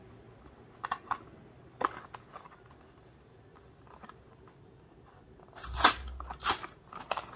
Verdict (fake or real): real